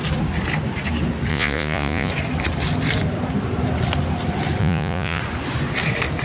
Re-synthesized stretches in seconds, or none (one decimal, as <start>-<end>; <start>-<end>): 1.3-2.1; 4.6-5.2